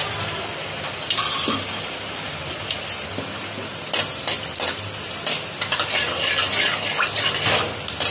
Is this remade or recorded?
recorded